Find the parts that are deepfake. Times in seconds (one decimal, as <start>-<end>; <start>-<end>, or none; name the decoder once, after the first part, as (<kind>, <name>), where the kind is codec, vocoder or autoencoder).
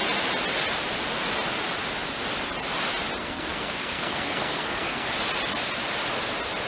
3.2-5.1 (codec, SNAC)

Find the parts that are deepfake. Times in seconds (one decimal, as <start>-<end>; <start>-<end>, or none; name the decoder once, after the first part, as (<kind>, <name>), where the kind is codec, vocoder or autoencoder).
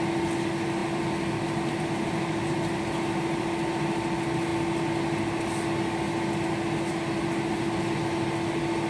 none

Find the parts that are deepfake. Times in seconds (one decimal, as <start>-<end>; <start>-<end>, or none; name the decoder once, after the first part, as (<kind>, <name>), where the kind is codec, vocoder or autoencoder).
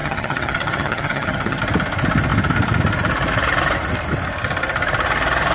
0.0-1.6 (vocoder, HiFi-GAN)